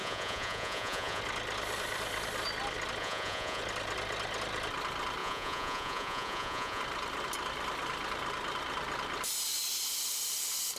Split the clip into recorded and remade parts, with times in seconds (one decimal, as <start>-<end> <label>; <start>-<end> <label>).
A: 0.0-1.2 remade; 1.2-3.0 recorded; 3.0-3.6 remade; 3.6-5.2 recorded; 5.2-6.8 remade; 6.8-10.8 recorded